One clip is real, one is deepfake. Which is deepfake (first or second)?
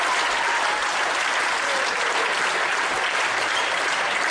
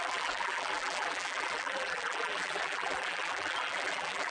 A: second